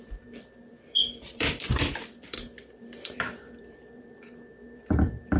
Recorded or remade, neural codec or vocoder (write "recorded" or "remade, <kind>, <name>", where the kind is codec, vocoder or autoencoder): remade, vocoder, BigVGAN v2